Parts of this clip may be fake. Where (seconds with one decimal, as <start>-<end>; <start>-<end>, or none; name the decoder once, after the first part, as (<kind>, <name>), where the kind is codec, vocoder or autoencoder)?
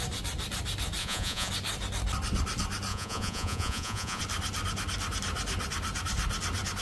1.0-1.5 (vocoder, Vocos); 2.9-4.2